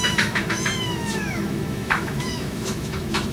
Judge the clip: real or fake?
fake